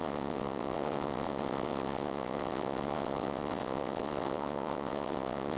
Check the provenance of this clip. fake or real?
fake